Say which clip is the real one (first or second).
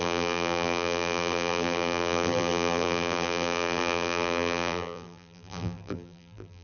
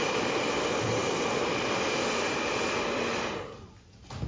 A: second